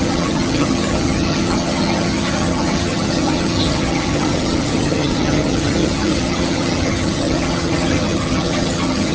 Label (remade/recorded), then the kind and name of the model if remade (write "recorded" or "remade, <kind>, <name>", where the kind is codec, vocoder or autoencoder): remade, vocoder, HiFi-GAN